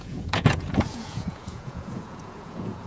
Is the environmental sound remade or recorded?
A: remade